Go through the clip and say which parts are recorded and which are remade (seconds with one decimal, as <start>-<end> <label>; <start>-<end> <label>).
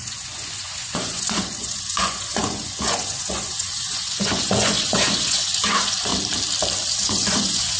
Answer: 0.0-6.1 remade; 6.1-6.9 recorded; 6.9-7.8 remade